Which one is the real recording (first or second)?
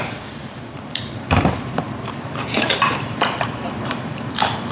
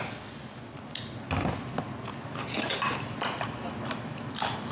second